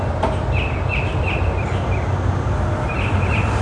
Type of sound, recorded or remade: recorded